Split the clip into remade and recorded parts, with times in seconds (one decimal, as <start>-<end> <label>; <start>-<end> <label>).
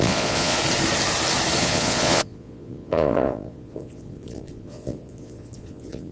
0.0-0.6 remade; 0.6-1.6 recorded; 1.6-6.1 remade